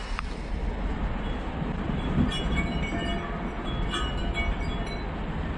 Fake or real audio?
real